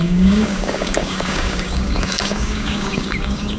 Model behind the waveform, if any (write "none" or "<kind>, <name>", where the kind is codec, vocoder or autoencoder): codec, DAC